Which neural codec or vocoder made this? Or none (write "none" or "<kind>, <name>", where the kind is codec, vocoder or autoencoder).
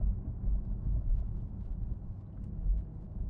none